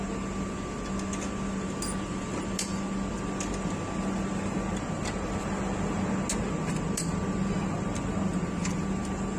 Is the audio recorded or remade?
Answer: recorded